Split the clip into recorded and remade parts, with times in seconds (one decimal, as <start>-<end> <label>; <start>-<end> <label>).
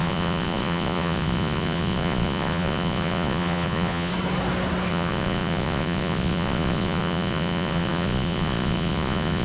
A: 0.0-4.1 remade; 4.1-4.9 recorded; 4.9-9.4 remade